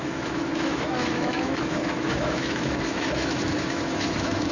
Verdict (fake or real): fake